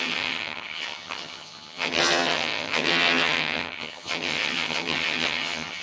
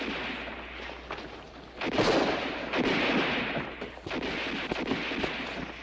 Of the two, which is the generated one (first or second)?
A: first